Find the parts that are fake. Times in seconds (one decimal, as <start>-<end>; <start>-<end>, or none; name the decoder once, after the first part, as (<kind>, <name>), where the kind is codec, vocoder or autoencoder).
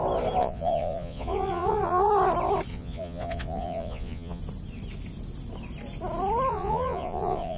0.4-2.1 (vocoder, Vocos); 2.7-4.4; 6.5-7.6